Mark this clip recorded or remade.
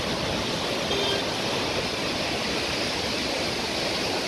recorded